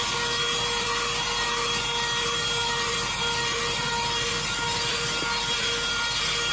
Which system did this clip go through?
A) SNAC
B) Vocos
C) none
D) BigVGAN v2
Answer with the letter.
C